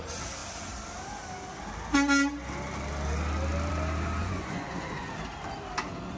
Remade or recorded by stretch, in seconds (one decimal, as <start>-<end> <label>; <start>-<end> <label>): 0.0-4.2 recorded; 4.2-5.1 remade; 5.1-6.2 recorded